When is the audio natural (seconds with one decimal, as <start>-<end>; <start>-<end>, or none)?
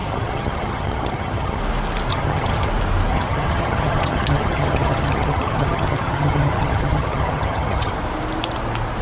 1.6-2.1; 2.7-3.1; 7.9-9.0